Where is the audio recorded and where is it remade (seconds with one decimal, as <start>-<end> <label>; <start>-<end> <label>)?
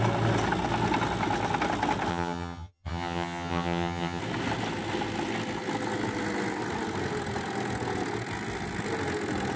0.0-2.1 recorded; 2.1-4.2 remade; 4.2-9.6 recorded